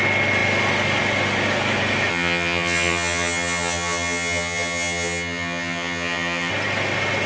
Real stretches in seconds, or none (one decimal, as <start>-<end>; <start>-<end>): 0.0-2.1; 6.5-7.3